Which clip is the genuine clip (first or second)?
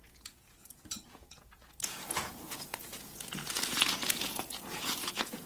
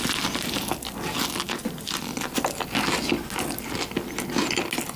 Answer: second